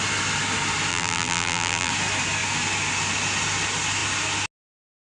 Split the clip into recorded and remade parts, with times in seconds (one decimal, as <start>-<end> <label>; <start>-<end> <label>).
0.0-0.9 recorded; 0.9-1.9 remade; 1.9-5.2 recorded